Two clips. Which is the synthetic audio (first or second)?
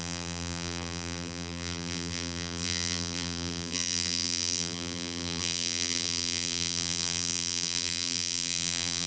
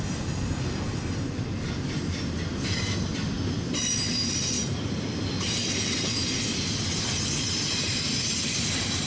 first